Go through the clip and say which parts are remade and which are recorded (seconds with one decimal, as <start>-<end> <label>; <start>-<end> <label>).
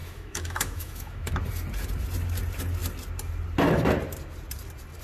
0.0-1.3 remade; 1.3-5.0 recorded